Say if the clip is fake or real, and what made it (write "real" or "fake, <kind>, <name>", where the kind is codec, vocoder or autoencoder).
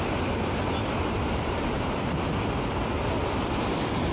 real